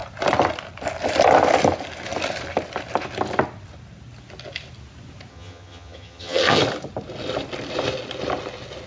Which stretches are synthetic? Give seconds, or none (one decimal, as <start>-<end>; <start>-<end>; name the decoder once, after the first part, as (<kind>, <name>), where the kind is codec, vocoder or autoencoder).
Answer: 5.3-6.6 (vocoder, HiFi-GAN)